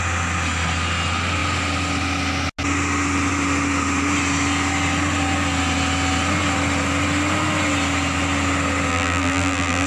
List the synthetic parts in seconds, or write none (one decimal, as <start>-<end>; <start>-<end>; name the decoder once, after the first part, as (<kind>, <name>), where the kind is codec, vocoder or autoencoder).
8.9-9.9 (vocoder, BigVGAN v2)